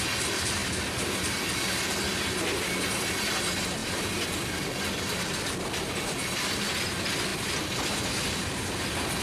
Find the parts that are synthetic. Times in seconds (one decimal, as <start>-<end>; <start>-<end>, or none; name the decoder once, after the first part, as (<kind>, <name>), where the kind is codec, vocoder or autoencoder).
3.8-4.7 (vocoder, BigVGAN v2); 7.3-8.5